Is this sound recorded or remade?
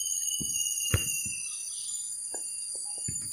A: recorded